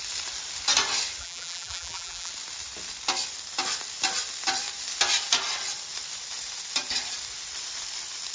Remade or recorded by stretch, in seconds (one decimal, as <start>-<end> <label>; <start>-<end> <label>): 0.0-1.2 recorded; 1.2-2.3 remade; 2.3-8.3 recorded